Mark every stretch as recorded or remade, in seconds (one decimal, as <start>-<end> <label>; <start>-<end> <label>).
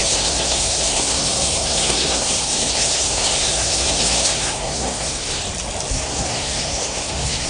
0.0-5.4 remade; 5.4-5.9 recorded; 5.9-7.5 remade